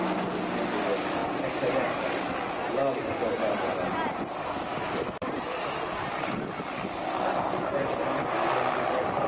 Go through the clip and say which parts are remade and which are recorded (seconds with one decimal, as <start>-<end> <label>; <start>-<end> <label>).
0.0-1.2 recorded; 1.2-1.7 remade; 1.7-4.7 recorded; 4.7-6.6 remade; 6.6-9.3 recorded